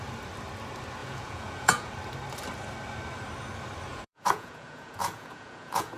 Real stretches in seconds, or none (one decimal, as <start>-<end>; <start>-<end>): 0.0-1.0; 1.9-3.9